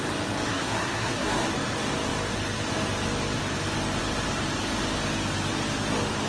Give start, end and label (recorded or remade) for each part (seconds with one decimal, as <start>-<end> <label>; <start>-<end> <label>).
0.0-0.5 recorded; 0.5-1.5 remade; 1.5-6.3 recorded